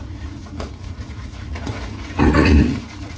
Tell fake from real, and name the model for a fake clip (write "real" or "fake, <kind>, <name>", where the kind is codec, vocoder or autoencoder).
fake, vocoder, Vocos